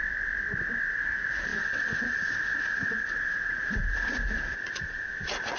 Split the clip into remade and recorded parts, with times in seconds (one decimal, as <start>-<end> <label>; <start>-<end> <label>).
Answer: 0.0-0.9 recorded; 0.9-5.6 remade

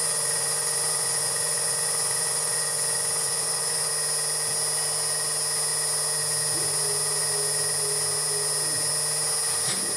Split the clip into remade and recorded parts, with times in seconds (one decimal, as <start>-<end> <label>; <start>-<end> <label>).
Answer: 0.0-3.9 remade; 3.9-10.0 recorded

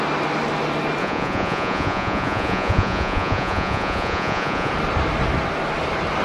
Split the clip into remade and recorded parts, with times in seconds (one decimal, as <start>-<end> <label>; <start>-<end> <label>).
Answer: 0.0-1.0 recorded; 1.0-4.7 remade; 4.7-6.2 recorded

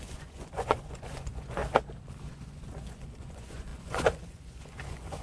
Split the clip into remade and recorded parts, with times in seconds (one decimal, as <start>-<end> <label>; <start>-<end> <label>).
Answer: 0.0-1.6 remade; 1.6-2.2 recorded; 2.2-5.2 remade

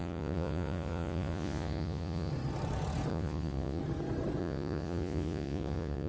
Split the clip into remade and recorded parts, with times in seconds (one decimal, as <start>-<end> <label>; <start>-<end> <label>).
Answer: 0.0-2.3 remade; 2.3-3.1 recorded; 3.1-3.8 remade; 3.8-4.4 recorded; 4.4-6.1 remade